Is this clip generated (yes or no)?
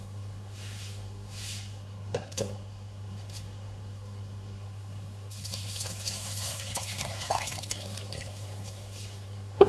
yes